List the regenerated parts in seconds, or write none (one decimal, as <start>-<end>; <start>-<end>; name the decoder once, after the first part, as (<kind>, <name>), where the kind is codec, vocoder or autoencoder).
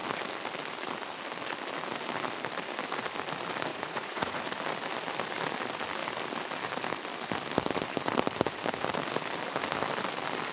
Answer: 3.7-4.4 (vocoder, Vocos)